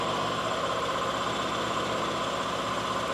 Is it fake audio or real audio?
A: real